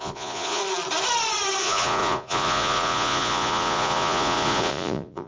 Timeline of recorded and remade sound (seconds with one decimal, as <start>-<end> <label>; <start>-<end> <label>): 0.0-0.6 remade; 0.6-1.6 recorded; 1.6-5.3 remade